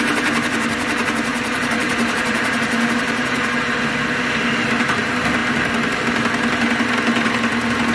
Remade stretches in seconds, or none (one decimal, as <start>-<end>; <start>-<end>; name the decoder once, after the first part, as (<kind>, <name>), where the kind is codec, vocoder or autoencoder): 1.3-3.8 (vocoder, BigVGAN v2)